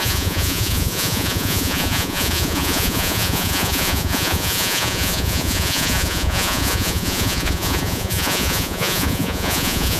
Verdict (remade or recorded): remade